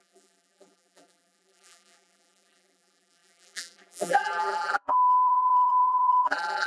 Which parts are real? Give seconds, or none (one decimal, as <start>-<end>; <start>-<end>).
none